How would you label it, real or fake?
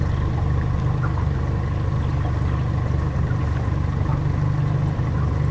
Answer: real